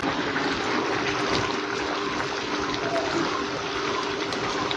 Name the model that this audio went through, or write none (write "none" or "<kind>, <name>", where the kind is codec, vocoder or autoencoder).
none